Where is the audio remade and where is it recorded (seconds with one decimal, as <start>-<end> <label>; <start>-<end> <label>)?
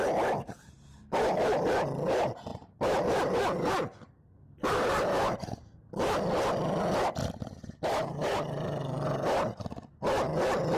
0.0-10.8 recorded